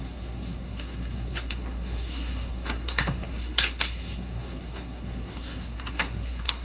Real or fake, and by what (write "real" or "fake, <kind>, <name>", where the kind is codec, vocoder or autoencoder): fake, codec, SNAC